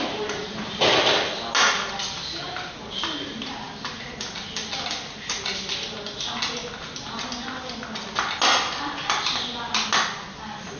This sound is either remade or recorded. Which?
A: recorded